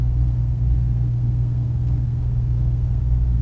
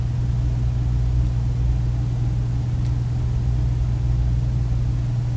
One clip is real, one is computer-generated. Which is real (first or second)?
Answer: second